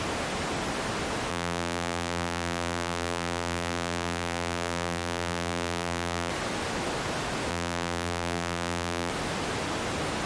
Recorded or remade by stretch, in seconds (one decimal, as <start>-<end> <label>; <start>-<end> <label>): 0.0-1.3 recorded; 1.3-6.3 remade; 6.3-7.5 recorded; 7.5-9.1 remade; 9.1-10.3 recorded